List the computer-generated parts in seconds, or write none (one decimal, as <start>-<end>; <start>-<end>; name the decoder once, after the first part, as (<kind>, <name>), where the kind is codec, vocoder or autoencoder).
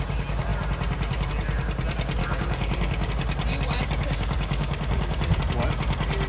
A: 2.2-3.1 (codec, DAC); 3.5-5.4